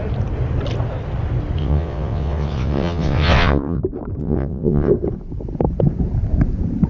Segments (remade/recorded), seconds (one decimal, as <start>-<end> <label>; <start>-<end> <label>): 0.0-1.6 recorded; 1.6-3.8 remade; 3.8-4.2 recorded; 4.2-4.9 remade; 4.9-6.9 recorded